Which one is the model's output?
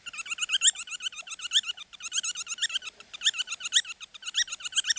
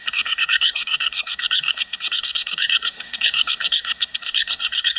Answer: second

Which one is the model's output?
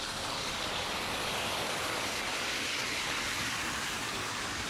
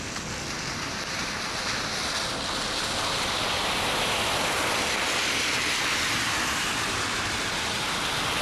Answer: first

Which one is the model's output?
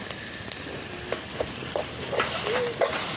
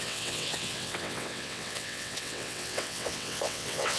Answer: second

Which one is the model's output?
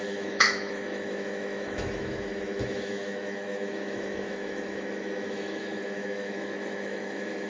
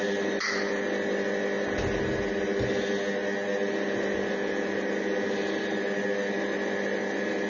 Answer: first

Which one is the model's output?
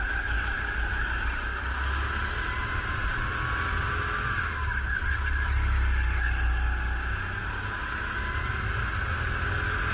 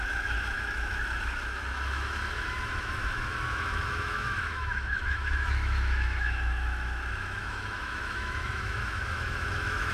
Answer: second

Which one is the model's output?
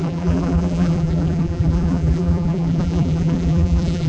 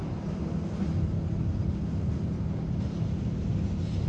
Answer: first